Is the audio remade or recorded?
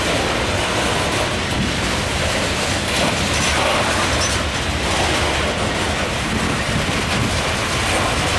recorded